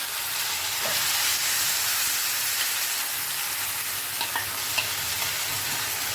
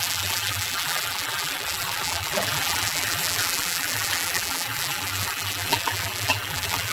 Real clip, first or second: first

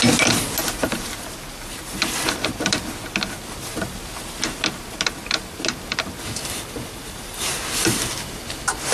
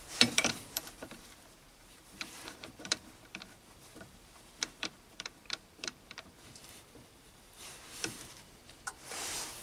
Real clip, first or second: first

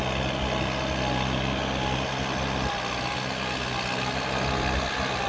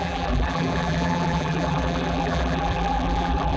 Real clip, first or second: first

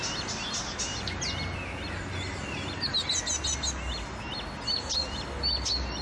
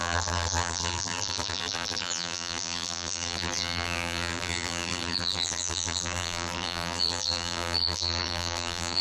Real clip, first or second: first